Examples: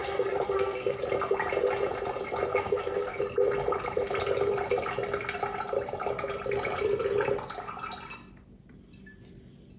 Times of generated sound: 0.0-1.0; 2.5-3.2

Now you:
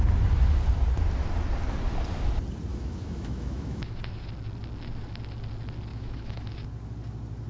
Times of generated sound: 2.7-4.0; 5.9-6.5

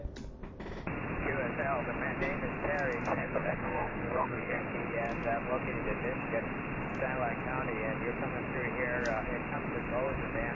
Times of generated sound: 3.1-4.6

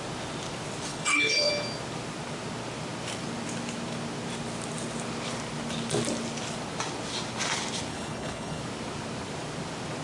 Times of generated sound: 0.9-1.5; 7.9-8.6